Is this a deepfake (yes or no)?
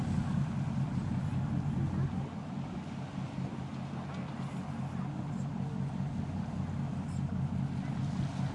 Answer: no